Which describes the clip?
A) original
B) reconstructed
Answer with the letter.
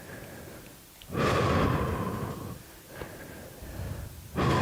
A